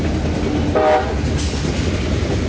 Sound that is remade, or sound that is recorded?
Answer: recorded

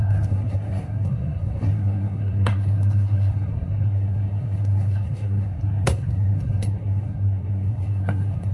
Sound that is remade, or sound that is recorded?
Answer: remade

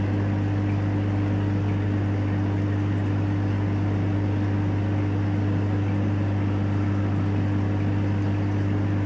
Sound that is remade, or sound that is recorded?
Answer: recorded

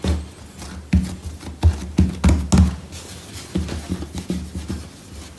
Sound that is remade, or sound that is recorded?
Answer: recorded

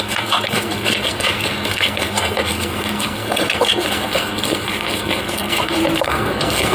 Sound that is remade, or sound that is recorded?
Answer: remade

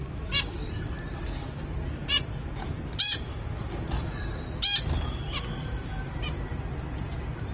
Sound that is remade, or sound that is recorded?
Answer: recorded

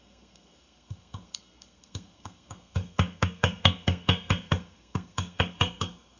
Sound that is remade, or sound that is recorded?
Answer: remade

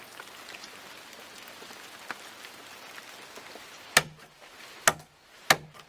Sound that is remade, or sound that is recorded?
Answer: recorded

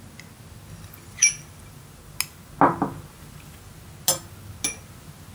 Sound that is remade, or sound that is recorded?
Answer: recorded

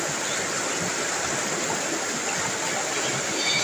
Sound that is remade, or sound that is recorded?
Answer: recorded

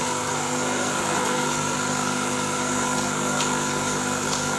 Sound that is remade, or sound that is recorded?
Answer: remade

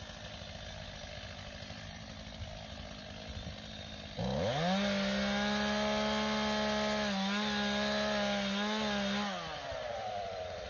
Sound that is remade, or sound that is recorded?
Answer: recorded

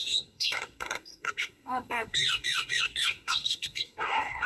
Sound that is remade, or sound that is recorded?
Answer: remade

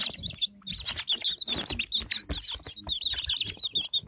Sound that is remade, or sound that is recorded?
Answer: recorded